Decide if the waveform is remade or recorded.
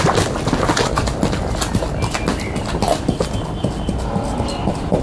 recorded